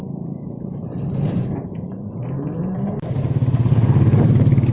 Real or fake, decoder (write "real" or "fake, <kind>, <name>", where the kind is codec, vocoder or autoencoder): fake, vocoder, BigVGAN v2